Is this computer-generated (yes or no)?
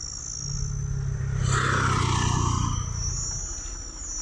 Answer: no